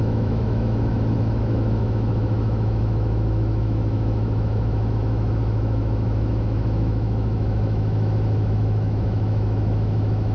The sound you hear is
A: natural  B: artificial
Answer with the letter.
B